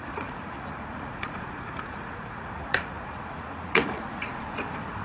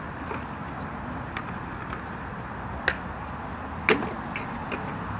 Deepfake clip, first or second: first